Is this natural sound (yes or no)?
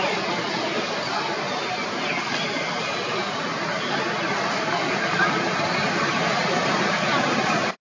yes